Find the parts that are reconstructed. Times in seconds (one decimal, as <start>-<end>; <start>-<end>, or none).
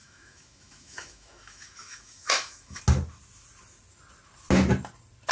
0.0-2.8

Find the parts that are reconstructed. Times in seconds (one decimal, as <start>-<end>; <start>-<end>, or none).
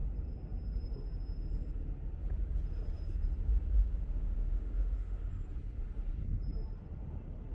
3.8-5.3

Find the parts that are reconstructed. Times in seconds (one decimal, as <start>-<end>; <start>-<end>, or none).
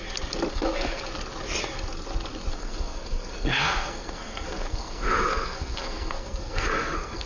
0.5-1.0; 2.5-7.3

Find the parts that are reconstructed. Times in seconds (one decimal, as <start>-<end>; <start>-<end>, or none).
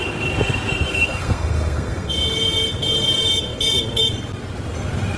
0.9-2.1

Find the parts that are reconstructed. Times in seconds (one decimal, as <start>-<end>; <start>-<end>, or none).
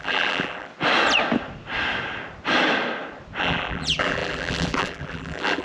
0.0-0.7; 3.4-5.6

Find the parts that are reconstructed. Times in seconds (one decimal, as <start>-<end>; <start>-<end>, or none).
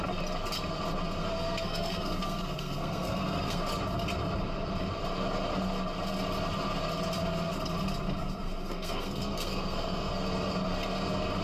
1.2-3.6; 8.2-10.1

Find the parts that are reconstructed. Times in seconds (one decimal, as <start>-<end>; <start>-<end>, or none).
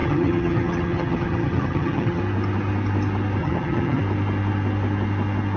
0.0-2.2; 3.4-4.0